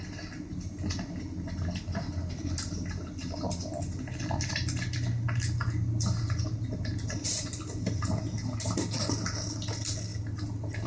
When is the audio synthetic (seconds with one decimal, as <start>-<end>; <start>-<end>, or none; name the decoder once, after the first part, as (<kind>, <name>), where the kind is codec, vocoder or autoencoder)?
none